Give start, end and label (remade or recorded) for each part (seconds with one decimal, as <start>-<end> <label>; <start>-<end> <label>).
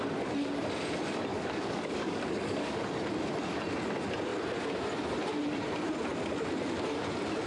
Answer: 0.0-1.3 recorded; 1.3-2.9 remade; 2.9-7.5 recorded